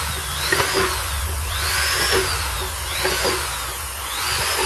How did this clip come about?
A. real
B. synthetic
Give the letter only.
B